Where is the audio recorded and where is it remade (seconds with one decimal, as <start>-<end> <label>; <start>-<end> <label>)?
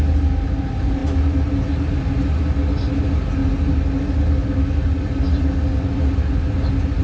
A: 0.0-7.0 recorded